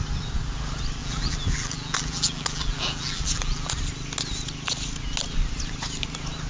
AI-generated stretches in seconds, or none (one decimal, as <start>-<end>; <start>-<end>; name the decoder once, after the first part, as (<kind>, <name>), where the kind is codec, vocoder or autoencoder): 1.0-3.7 (vocoder, BigVGAN v2)